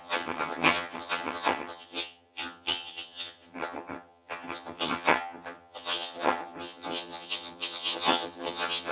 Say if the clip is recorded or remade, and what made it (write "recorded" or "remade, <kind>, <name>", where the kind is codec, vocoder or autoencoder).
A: remade, vocoder, HiFi-GAN